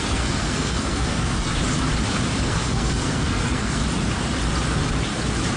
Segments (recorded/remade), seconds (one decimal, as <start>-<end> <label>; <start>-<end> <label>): 0.0-1.5 remade; 1.5-2.4 recorded; 2.4-3.8 remade; 3.8-5.6 recorded